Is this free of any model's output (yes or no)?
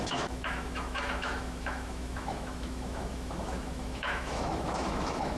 no